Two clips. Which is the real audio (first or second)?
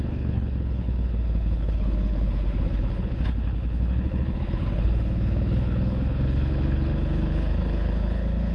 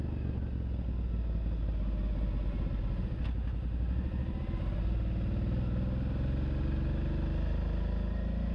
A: second